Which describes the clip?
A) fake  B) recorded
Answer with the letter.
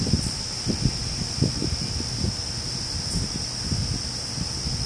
B